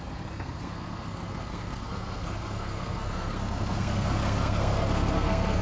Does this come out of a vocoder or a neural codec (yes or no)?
yes